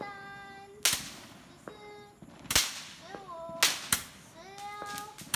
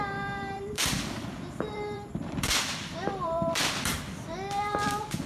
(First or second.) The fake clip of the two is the second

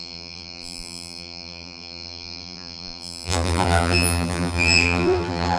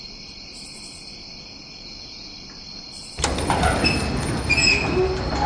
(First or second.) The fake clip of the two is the first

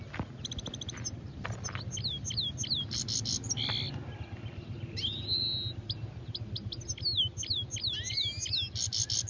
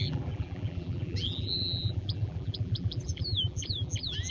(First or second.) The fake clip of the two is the second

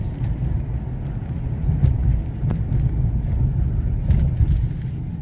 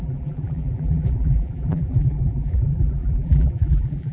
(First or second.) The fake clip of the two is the second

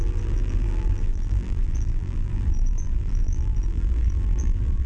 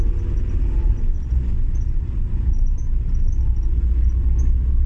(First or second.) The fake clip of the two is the first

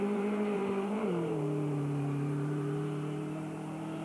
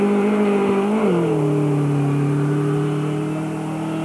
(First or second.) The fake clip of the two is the first